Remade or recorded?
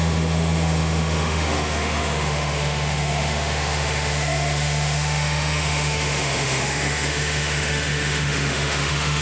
remade